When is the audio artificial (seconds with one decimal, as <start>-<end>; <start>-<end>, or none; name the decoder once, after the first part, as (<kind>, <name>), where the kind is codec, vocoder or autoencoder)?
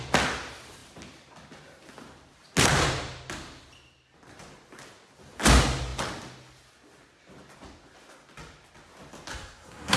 9.3-10.0 (codec, SNAC)